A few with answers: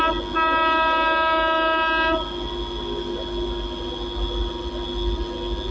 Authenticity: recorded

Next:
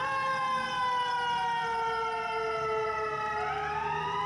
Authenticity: recorded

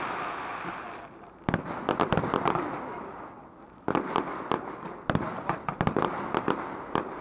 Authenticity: recorded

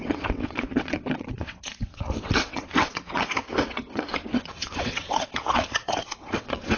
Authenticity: remade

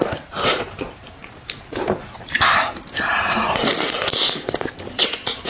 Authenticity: remade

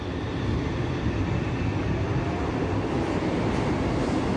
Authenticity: recorded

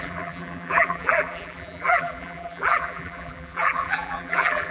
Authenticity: remade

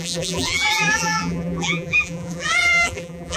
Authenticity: remade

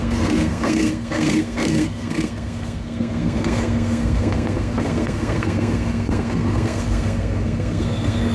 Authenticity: remade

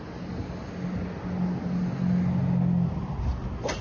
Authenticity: recorded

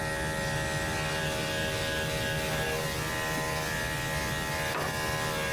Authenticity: recorded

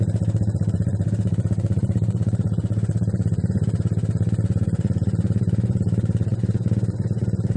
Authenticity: remade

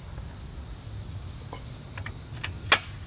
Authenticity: recorded